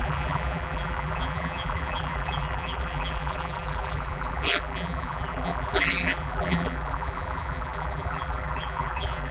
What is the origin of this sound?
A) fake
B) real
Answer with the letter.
A